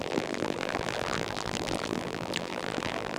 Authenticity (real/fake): fake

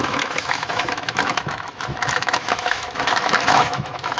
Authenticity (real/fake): fake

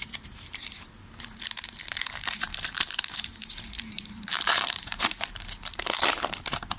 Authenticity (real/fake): fake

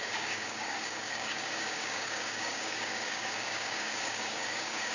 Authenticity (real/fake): fake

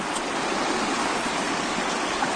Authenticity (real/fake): real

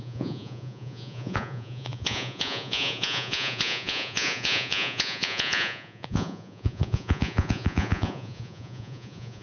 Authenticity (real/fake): fake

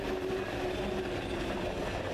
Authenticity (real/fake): real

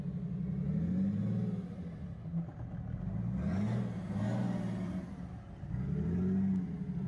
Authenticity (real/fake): real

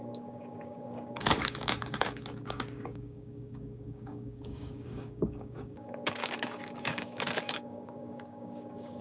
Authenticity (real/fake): fake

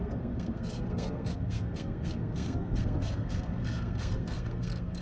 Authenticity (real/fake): fake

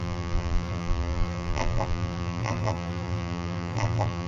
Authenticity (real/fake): fake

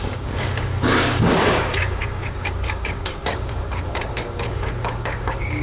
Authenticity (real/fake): fake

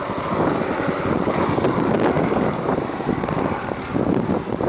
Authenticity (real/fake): real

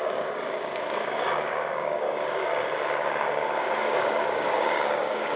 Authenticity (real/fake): fake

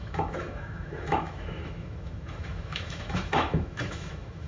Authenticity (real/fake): fake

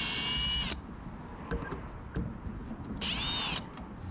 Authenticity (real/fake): real